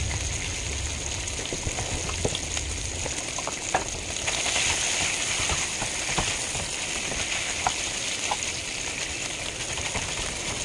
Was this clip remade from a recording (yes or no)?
no